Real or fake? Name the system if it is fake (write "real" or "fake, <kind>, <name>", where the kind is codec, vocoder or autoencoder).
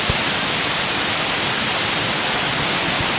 real